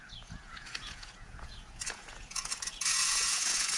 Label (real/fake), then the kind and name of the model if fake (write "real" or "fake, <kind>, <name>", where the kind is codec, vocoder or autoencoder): fake, vocoder, Vocos